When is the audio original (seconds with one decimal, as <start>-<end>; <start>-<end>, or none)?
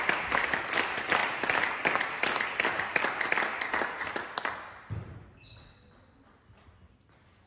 0.0-7.5